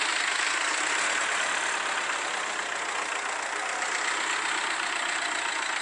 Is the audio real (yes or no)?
yes